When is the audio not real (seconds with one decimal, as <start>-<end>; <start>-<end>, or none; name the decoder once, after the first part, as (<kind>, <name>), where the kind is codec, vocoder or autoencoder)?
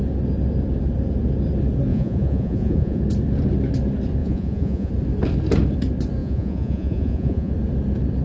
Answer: 1.9-3.0 (vocoder, Vocos); 4.2-4.9; 6.2-7.5